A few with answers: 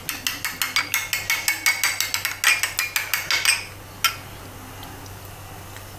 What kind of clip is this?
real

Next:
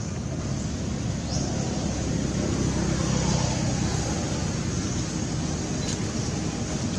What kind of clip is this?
real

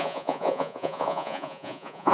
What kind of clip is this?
fake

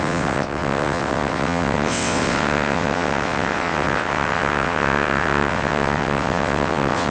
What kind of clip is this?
fake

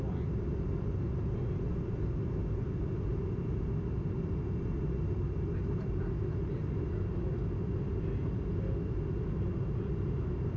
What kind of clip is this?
real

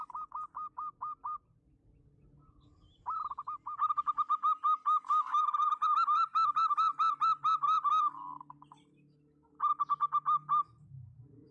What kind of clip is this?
real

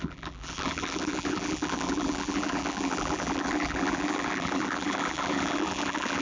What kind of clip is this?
fake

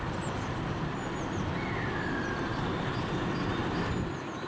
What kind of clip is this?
real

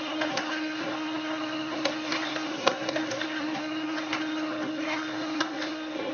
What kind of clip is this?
fake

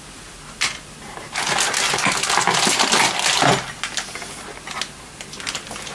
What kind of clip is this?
real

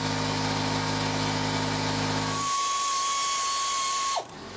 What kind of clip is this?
real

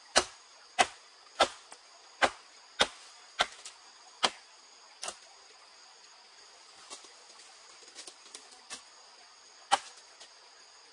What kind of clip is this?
real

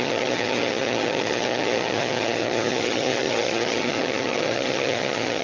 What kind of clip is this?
fake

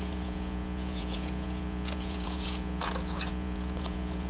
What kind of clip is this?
fake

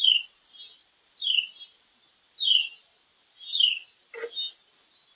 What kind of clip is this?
real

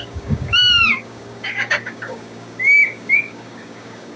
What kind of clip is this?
fake